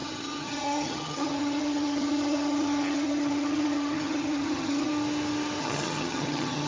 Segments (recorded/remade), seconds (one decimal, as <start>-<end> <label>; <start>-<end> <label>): 0.0-4.9 remade; 4.9-5.6 recorded; 5.6-6.7 remade